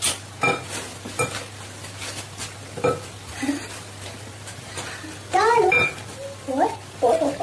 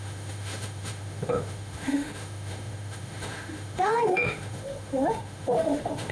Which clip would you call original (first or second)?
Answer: first